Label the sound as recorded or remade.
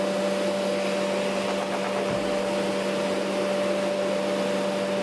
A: recorded